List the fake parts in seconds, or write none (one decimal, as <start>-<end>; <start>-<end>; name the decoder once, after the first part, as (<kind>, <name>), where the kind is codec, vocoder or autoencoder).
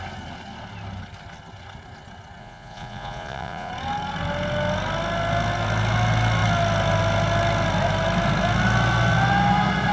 2.4-3.7 (vocoder, Vocos)